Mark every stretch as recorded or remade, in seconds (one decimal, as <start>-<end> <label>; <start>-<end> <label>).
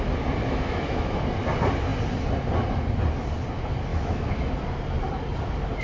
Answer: 0.0-0.4 recorded; 0.4-1.2 remade; 1.2-3.9 recorded; 3.9-4.5 remade; 4.5-5.8 recorded